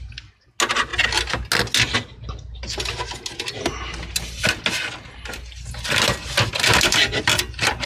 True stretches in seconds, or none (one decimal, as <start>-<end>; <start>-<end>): 0.0-7.9